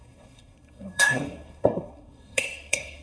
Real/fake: fake